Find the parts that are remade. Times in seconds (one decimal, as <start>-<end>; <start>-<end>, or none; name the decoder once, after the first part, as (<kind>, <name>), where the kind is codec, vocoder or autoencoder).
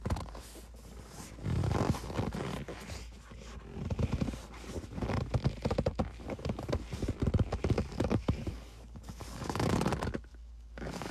7.9-9.9 (codec, DAC); 10.3-11.1